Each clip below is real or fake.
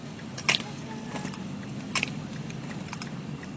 real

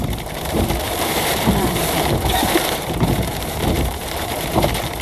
fake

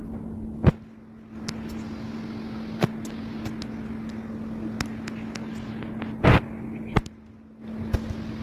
real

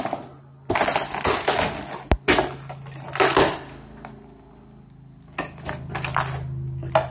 real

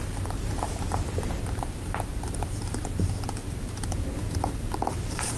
fake